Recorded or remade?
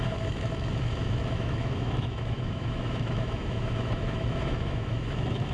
remade